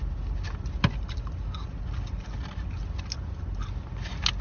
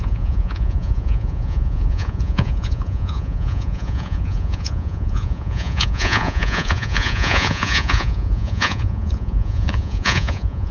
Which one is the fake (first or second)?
second